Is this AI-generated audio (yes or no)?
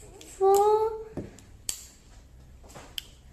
no